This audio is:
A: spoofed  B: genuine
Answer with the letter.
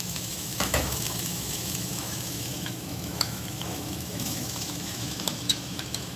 A